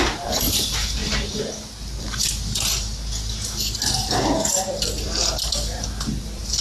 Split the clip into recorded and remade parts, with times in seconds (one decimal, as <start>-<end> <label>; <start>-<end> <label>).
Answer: 0.0-1.0 remade; 1.0-5.0 recorded; 5.0-6.6 remade